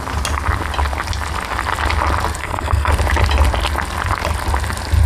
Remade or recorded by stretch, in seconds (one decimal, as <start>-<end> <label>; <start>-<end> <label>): 0.0-2.4 recorded; 2.4-2.9 remade; 2.9-5.1 recorded